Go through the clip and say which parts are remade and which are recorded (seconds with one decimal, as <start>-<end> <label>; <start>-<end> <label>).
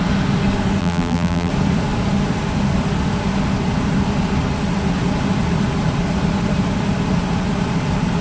0.0-0.8 recorded; 0.8-1.5 remade; 1.5-8.2 recorded